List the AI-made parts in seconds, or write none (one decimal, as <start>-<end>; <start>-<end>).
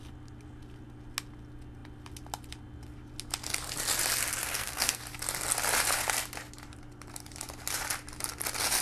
4.4-5.0